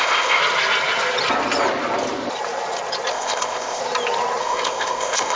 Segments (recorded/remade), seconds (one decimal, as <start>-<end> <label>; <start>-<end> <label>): 0.0-0.4 remade; 0.4-3.1 recorded; 3.1-3.8 remade; 3.8-4.4 recorded; 4.4-5.4 remade